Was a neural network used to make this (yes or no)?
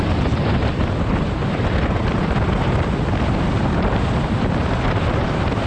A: no